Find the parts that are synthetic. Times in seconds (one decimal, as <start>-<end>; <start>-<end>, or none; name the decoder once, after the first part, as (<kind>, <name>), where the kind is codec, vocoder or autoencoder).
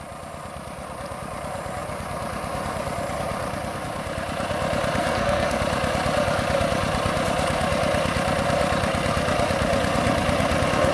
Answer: 5.0-5.6 (codec, SNAC)